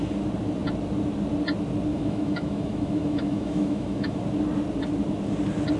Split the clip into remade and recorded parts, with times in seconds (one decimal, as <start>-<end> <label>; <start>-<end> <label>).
0.0-1.9 recorded; 1.9-4.2 remade; 4.2-5.8 recorded